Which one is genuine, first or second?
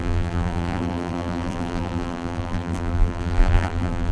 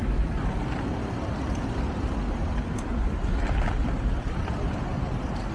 second